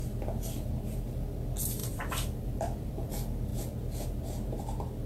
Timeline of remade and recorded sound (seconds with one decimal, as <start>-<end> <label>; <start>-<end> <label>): 0.0-0.7 remade; 0.7-1.8 recorded; 1.8-3.1 remade; 3.1-5.1 recorded